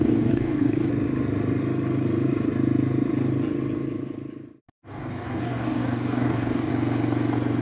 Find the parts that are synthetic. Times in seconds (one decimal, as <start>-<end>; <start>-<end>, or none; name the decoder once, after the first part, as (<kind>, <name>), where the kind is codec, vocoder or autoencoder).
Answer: 0.0-0.9 (codec, DAC); 4.9-6.7

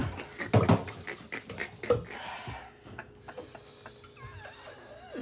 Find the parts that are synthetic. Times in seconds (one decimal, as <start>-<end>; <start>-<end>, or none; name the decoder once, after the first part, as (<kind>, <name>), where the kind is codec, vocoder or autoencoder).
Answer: none